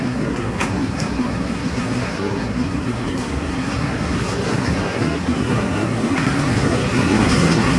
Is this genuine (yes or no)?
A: no